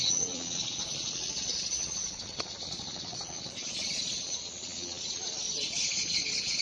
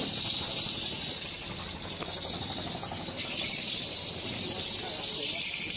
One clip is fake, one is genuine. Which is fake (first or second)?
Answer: first